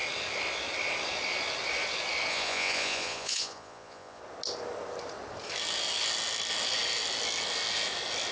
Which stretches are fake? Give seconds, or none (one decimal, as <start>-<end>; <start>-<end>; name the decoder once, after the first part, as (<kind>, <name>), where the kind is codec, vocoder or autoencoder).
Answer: 2.3-4.2 (vocoder, Vocos)